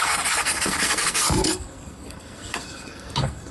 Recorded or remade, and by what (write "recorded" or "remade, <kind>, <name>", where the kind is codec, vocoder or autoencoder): remade, codec, SNAC